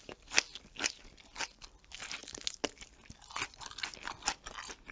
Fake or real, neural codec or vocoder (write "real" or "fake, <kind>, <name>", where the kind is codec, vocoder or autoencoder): real